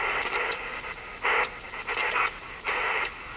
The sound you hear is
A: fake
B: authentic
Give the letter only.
B